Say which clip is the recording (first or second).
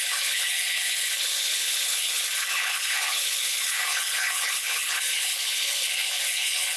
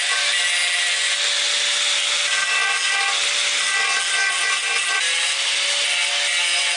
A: second